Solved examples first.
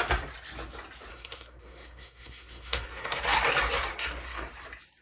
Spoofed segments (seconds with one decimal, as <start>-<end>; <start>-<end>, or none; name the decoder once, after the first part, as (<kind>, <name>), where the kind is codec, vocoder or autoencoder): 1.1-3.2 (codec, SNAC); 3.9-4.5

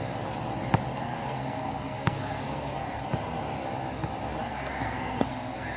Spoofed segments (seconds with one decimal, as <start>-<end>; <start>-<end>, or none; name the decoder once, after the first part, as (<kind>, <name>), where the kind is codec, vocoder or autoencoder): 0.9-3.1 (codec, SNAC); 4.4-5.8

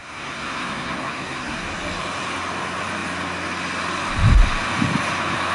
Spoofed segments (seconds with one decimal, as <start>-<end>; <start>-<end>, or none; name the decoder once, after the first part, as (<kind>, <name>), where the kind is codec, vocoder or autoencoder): 0.0-1.6 (codec, SNAC)

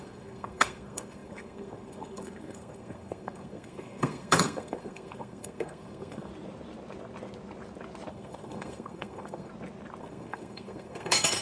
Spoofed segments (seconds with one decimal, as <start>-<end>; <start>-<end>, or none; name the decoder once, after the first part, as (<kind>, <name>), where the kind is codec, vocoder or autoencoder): 0.0-6.3 (codec, SNAC); 8.1-9.5; 10.0-11.4